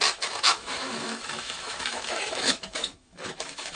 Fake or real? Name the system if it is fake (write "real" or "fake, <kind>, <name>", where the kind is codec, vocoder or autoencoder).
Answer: fake, autoencoder, DAC-VAE